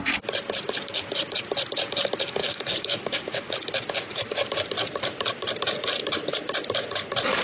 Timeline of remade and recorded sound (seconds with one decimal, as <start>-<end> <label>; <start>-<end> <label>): 0.0-2.4 recorded; 2.4-3.5 remade; 3.5-7.4 recorded